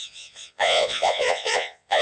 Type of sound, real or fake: fake